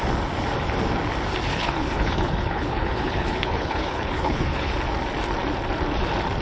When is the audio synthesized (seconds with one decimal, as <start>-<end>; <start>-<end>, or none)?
1.5-4.7